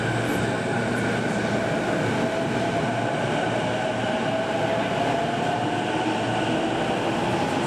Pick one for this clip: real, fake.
real